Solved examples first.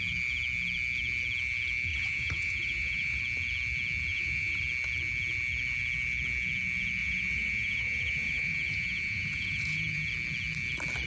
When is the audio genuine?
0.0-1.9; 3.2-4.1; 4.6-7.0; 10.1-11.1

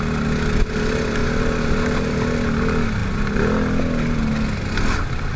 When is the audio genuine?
0.0-5.4

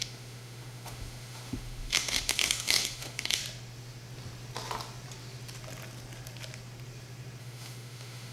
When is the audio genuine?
3.4-7.4

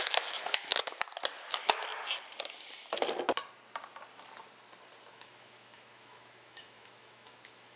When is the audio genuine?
0.7-1.4; 1.9-5.1